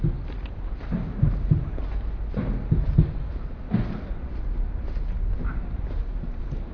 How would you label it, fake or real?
real